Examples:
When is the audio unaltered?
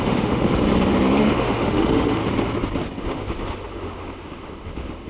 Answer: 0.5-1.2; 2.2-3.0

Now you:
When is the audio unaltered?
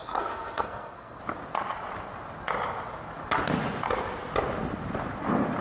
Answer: 1.2-5.6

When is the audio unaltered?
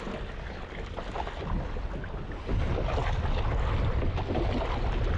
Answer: 0.0-5.2